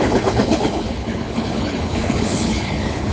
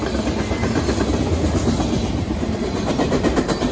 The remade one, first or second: first